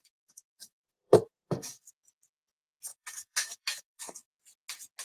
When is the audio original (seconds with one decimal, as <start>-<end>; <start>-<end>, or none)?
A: 1.9-2.9; 4.3-5.0